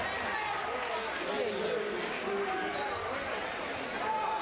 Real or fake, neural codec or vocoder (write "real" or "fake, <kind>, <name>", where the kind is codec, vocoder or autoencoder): real